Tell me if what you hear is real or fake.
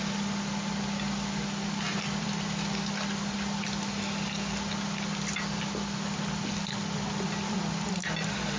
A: real